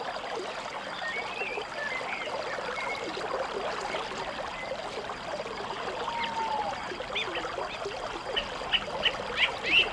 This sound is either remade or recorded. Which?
recorded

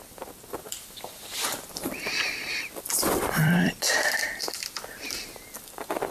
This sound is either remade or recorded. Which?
remade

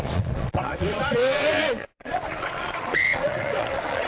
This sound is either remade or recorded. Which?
remade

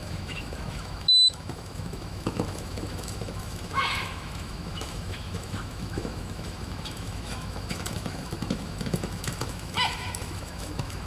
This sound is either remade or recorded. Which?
remade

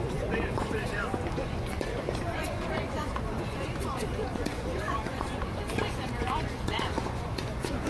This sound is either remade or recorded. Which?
remade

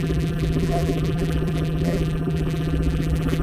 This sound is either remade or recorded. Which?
remade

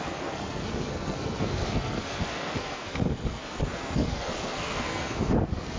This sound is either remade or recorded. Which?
remade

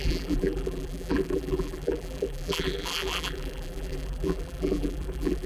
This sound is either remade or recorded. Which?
remade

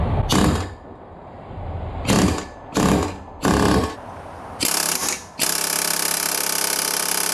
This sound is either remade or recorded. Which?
recorded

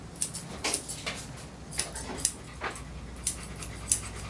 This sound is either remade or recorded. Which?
recorded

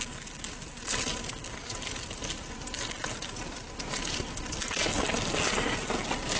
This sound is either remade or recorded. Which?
recorded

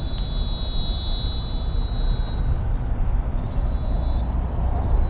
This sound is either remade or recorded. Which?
recorded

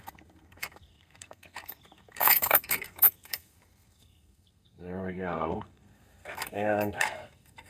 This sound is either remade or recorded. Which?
remade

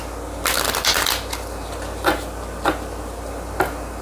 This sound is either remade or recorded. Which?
recorded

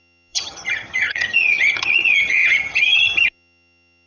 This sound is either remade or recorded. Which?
remade